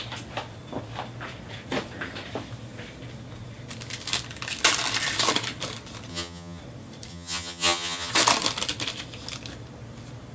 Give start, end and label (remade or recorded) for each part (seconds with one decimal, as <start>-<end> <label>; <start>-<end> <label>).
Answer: 0.0-6.1 recorded; 6.1-6.6 remade; 6.6-7.1 recorded; 7.1-8.1 remade; 8.1-10.3 recorded